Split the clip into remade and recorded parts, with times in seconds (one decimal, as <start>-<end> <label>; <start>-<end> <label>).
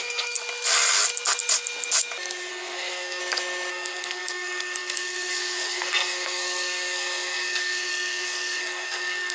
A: 0.0-0.4 remade; 0.4-2.5 recorded; 2.5-3.2 remade; 3.2-3.7 recorded; 3.7-9.3 remade